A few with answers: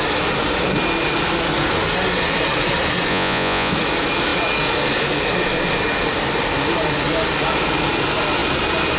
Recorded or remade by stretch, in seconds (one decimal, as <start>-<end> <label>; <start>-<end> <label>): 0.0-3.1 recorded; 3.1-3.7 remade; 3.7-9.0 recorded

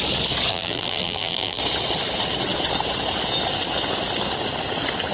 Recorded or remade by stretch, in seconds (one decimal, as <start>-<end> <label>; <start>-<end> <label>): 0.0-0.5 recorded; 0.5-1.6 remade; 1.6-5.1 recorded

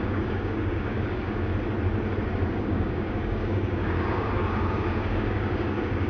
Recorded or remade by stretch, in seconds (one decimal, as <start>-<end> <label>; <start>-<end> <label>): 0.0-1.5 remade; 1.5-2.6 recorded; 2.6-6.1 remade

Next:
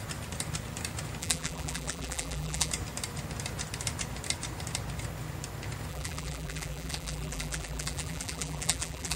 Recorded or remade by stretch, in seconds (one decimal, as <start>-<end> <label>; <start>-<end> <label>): 0.0-1.2 recorded; 1.2-2.7 remade; 2.7-5.9 recorded; 5.9-9.2 remade